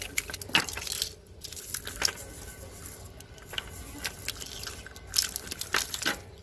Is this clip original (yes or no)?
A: yes